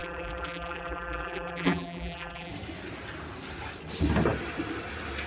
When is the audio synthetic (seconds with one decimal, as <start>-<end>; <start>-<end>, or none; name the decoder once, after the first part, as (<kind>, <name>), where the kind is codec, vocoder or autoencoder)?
0.0-2.5 (vocoder, BigVGAN v2)